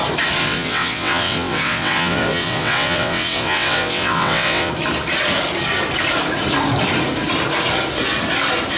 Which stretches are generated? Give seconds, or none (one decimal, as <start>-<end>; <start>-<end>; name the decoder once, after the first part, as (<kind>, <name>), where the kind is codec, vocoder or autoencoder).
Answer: 0.4-4.7 (vocoder, WaveNeXt)